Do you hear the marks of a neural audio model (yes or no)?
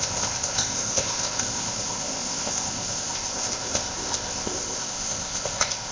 yes